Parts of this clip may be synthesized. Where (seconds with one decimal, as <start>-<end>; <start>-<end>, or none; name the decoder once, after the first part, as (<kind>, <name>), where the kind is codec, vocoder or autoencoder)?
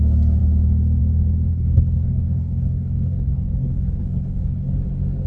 1.5-4.7 (codec, HILCodec)